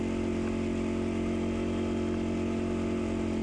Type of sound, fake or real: real